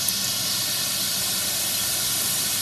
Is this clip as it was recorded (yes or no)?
yes